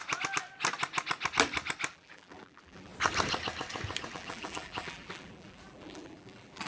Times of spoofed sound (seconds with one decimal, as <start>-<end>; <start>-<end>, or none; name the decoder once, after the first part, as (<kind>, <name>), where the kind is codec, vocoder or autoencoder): 1.9-2.9 (vocoder, BigVGAN v2); 4.1-6.7